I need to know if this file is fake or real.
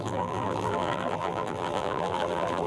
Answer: fake